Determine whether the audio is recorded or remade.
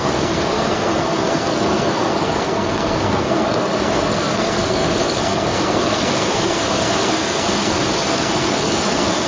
remade